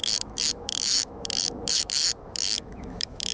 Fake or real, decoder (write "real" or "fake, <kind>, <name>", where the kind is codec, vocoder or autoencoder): fake, autoencoder, DAC-VAE